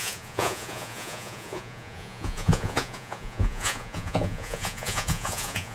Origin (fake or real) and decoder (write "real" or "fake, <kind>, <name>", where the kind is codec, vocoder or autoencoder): fake, vocoder, Vocos